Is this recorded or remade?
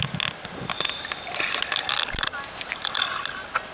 recorded